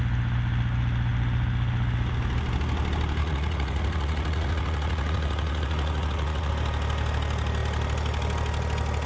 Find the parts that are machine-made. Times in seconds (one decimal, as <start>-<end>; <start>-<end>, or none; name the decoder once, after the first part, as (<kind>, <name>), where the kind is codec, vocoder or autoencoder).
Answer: 3.2-6.5 (vocoder, Vocos)